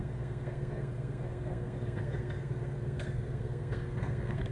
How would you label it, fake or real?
fake